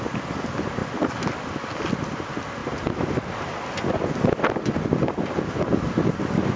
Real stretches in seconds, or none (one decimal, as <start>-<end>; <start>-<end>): 0.0-6.6